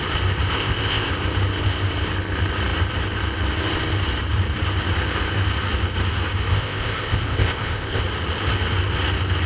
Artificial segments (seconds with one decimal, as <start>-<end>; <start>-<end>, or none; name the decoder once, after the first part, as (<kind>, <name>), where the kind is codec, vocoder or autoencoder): 0.5-1.1 (codec, ZipCodec); 6.5-8.0